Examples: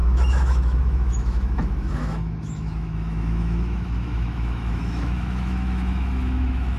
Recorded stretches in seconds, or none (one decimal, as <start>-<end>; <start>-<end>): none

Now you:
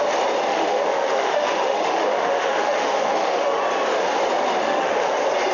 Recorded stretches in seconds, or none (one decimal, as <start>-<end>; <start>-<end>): 0.0-0.5; 3.6-4.6; 5.1-5.5

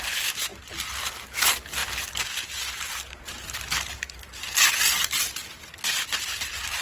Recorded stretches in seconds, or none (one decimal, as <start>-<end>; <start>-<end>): 0.0-6.8